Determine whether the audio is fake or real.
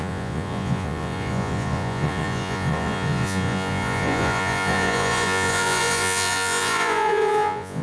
fake